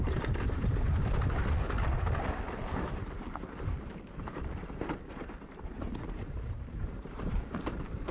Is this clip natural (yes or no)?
no